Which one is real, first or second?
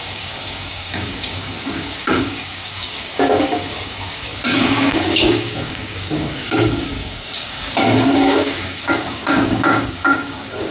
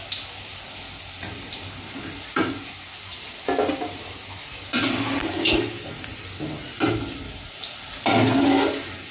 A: second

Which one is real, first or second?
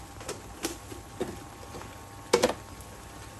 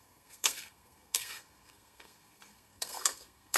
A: first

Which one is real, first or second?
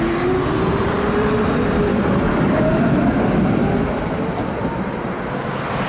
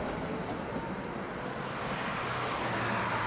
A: second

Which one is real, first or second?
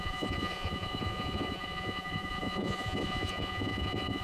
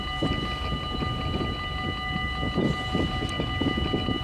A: second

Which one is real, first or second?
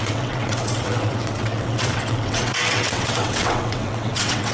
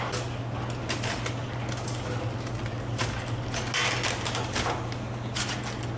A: second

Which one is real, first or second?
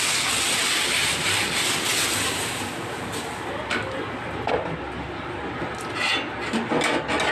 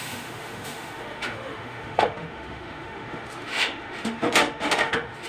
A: first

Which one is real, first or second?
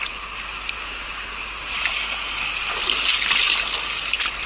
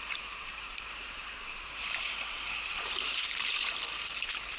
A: first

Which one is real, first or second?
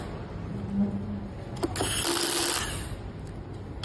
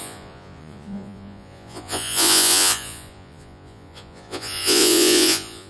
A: first